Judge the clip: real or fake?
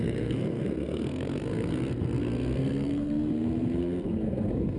fake